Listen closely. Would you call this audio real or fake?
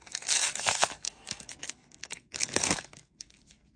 fake